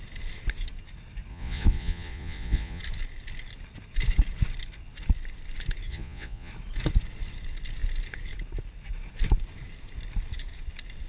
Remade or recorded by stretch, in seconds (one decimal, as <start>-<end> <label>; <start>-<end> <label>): 0.0-1.3 recorded; 1.3-2.8 remade; 2.8-5.9 recorded; 5.9-6.5 remade; 6.5-11.1 recorded